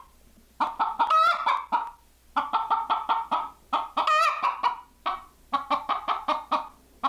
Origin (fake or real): real